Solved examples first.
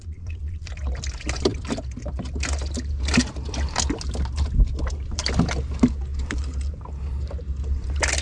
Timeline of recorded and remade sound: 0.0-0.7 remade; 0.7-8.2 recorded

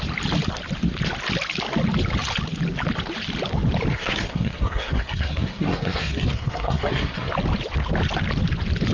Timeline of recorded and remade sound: 0.0-3.9 recorded; 3.9-7.3 remade; 7.3-8.9 recorded

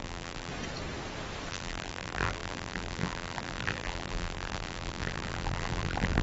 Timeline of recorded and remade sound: 0.0-0.5 remade; 0.5-1.5 recorded; 1.5-6.2 remade

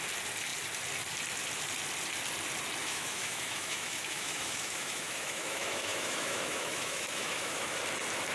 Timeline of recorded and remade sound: 0.0-2.8 recorded; 2.8-7.8 remade; 7.8-8.3 recorded

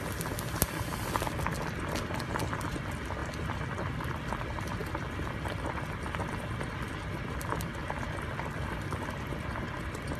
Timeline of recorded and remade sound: 0.0-4.8 recorded; 4.8-5.5 remade; 5.5-7.8 recorded; 7.8-10.2 remade

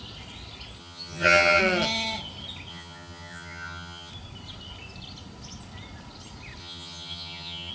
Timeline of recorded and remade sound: 0.0-0.8 recorded; 0.8-1.6 remade; 1.6-2.7 recorded; 2.7-4.1 remade; 4.1-6.6 recorded; 6.6-7.7 remade

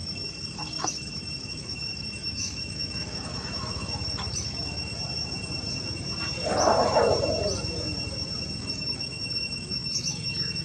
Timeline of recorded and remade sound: 0.0-4.9 remade; 4.9-8.6 recorded; 8.6-10.6 remade

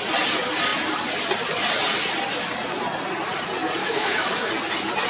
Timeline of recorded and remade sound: 0.0-3.8 recorded; 3.8-4.5 remade; 4.5-5.1 recorded